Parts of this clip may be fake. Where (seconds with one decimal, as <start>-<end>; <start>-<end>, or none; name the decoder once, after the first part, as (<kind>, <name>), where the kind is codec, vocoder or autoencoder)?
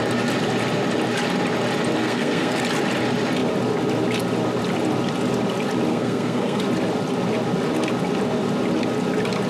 2.0-2.6 (codec, SNAC); 5.9-6.6